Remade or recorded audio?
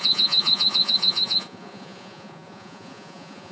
remade